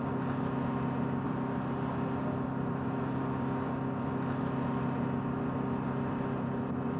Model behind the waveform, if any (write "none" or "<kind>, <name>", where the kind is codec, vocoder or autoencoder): none